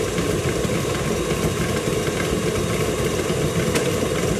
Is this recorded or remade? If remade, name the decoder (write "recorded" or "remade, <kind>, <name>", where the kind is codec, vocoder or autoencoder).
recorded